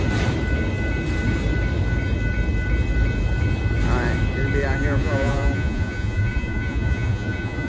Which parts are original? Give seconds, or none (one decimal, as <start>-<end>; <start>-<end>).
0.0-4.8